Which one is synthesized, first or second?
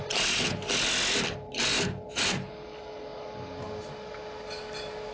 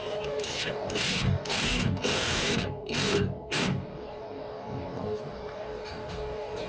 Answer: second